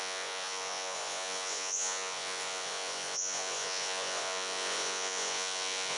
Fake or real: fake